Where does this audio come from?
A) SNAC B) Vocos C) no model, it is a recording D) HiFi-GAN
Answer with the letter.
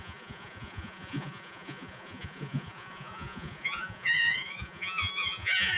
B